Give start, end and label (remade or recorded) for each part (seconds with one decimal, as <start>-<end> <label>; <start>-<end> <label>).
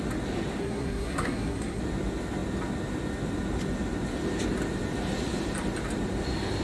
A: 0.0-0.6 recorded; 0.6-1.8 remade; 1.8-6.6 recorded